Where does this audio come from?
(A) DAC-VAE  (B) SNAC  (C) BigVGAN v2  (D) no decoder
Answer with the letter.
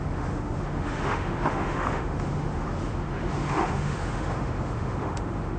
A